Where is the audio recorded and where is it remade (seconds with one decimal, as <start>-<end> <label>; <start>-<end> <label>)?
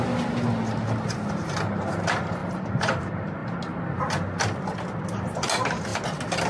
0.0-2.4 recorded; 2.4-3.0 remade; 3.0-6.5 recorded